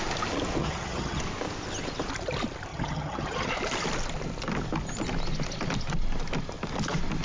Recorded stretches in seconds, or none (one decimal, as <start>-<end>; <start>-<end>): 0.0-0.6; 1.2-2.7; 3.5-7.2